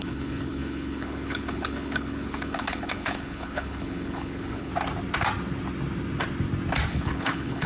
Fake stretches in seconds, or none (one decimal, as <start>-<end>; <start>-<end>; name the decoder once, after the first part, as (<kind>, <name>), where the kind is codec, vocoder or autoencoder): 0.0-4.7 (codec, HILCodec); 6.9-7.7